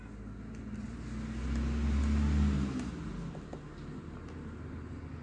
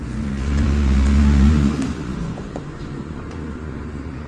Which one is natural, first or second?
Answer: first